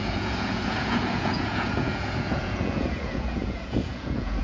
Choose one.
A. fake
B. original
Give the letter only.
A